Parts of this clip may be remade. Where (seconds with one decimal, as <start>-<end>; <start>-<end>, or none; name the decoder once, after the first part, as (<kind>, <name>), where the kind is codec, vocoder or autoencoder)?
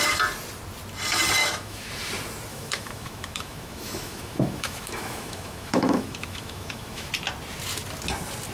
1.4-1.9 (autoencoder, DAC-VAE); 2.5-7.1